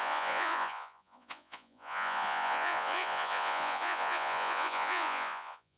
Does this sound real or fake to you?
fake